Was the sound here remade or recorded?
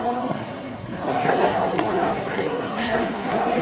remade